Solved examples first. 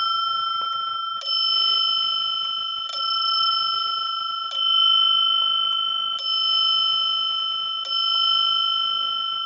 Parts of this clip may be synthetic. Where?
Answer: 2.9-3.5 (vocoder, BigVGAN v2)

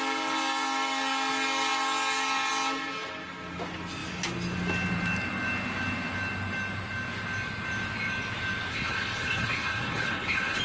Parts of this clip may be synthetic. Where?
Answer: 8.7-10.6 (codec, HILCodec)

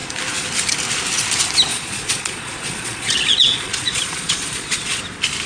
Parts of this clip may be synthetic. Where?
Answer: 1.7-5.0 (vocoder, Vocos)

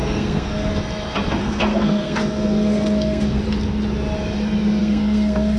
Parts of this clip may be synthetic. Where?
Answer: 0.0-0.7 (codec, SNAC); 1.4-3.4; 4.8-5.6

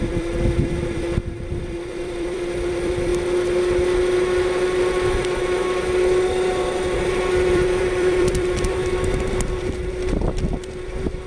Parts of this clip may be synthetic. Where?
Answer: 0.0-3.1 (vocoder, BigVGAN v2); 7.5-8.8; 9.3-11.3

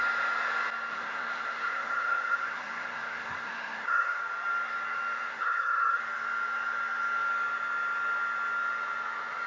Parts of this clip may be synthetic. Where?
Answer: 0.9-4.2 (codec, SNAC); 5.3-6.0